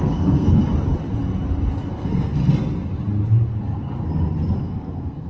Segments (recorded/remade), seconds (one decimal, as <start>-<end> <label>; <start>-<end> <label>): 0.0-0.6 remade; 0.6-1.9 recorded; 1.9-2.4 remade; 2.4-4.6 recorded; 4.6-5.3 remade